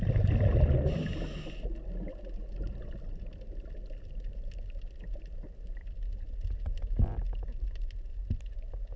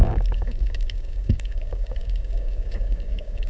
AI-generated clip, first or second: second